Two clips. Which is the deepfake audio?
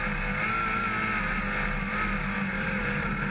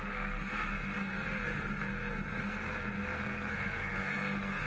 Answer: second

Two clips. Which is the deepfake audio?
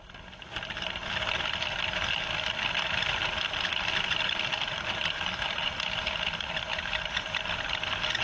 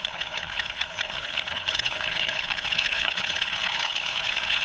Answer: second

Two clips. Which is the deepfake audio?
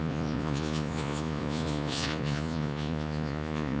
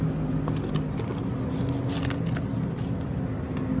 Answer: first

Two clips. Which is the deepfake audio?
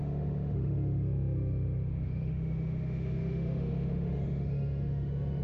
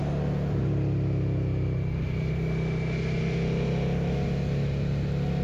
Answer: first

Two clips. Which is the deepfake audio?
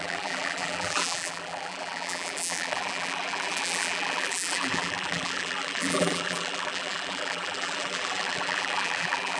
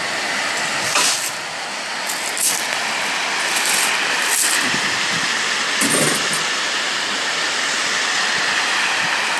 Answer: first